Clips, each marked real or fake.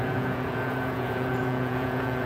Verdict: fake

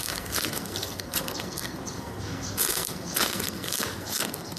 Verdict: fake